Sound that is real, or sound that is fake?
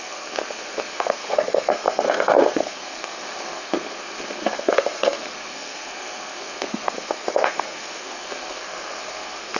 fake